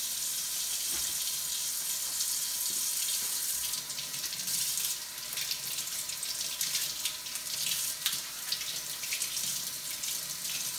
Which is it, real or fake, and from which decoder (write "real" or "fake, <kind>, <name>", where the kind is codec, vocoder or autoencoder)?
real